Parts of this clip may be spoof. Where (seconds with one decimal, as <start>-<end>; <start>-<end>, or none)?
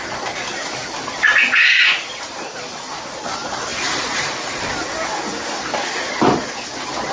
3.7-4.7